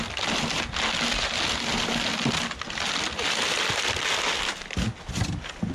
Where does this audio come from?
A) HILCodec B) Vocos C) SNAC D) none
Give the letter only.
D